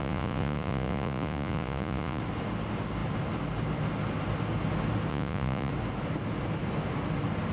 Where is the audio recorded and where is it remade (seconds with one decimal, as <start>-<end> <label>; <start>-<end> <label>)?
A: 0.0-2.2 remade; 2.2-5.1 recorded; 5.1-5.7 remade; 5.7-7.5 recorded